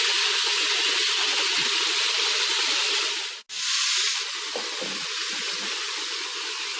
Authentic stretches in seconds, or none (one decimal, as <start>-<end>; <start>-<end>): 1.6-5.7